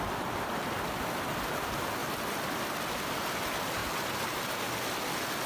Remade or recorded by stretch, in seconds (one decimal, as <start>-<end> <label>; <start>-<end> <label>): 0.0-2.0 recorded; 2.0-2.8 remade; 2.8-5.5 recorded